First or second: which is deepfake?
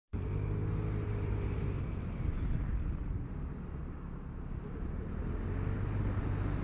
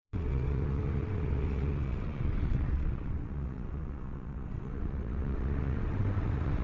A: second